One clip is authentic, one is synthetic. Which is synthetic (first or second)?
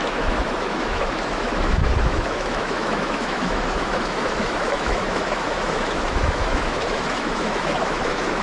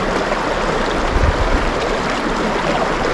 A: first